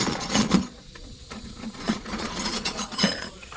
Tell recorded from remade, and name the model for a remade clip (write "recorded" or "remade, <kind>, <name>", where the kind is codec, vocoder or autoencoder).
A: remade, vocoder, Vocos